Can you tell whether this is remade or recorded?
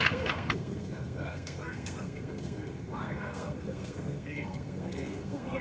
remade